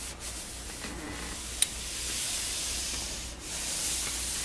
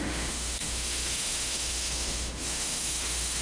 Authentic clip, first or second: first